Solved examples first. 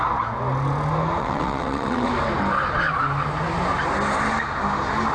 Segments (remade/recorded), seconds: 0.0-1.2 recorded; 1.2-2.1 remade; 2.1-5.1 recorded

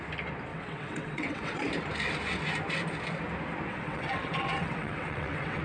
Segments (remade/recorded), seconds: 0.0-0.5 recorded; 0.5-1.7 remade; 1.7-3.7 recorded; 3.7-5.6 remade